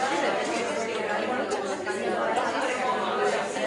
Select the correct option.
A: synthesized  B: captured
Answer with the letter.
B